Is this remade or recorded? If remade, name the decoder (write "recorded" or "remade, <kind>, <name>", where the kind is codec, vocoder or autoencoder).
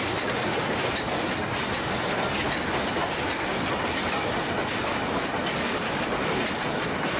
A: recorded